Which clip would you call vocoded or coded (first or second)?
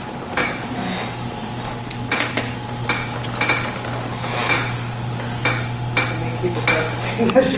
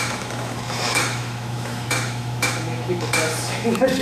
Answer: second